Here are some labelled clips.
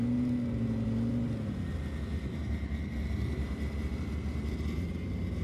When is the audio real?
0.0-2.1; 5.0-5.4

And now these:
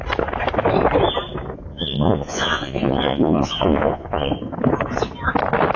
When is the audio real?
0.0-1.7; 4.3-5.8

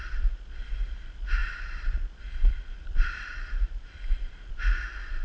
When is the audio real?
0.0-1.4; 4.5-5.2

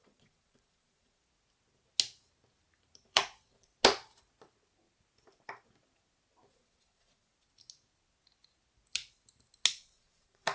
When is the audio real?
1.2-3.0; 3.7-6.5; 7.3-9.7